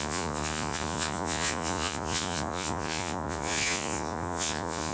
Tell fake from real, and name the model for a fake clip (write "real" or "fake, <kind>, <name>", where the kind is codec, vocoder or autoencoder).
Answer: fake, vocoder, Vocos